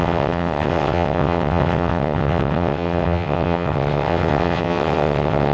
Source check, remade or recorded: remade